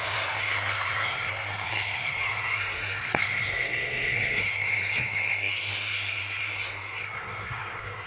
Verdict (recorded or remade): remade